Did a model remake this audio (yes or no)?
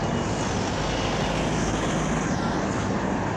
no